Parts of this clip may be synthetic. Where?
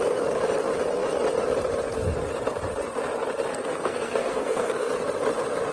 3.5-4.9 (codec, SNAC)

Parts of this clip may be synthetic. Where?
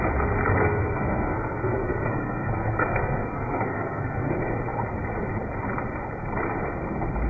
0.6-4.3 (codec, SNAC)